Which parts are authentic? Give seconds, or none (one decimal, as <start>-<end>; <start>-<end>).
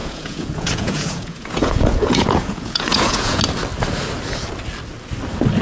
3.4-5.6